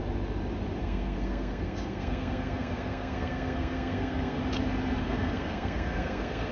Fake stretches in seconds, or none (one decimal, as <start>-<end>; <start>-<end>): 0.8-4.4; 5.0-6.5

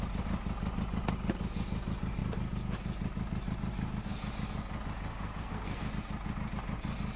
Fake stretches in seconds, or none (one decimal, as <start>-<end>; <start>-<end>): 5.1-5.9

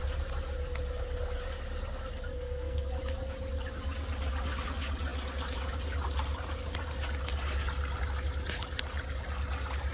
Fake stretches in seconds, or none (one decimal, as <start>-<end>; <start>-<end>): 2.3-2.9

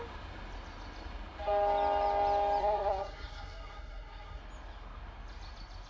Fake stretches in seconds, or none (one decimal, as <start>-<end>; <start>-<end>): 2.6-4.4

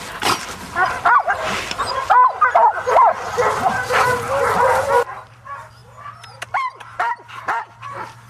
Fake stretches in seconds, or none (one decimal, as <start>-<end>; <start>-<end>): none